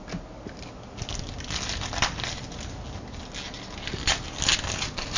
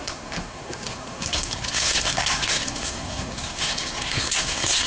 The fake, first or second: second